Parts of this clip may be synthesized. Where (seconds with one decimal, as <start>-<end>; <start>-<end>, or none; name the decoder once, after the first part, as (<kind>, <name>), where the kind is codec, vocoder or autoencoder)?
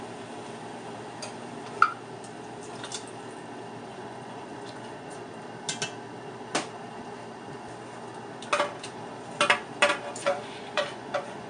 3.9-5.3 (vocoder, Vocos); 10.2-11.5